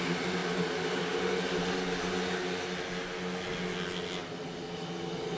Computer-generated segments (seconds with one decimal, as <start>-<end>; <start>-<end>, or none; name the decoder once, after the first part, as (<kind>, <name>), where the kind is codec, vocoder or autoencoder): none